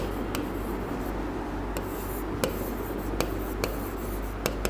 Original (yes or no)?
yes